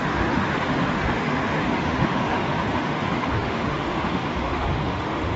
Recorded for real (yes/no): no